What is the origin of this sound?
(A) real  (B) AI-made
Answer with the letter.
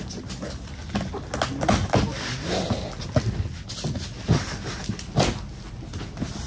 A